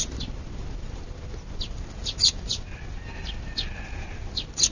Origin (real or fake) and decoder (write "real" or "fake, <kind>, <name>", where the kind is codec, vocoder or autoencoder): real